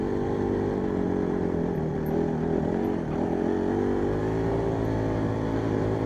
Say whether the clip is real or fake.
real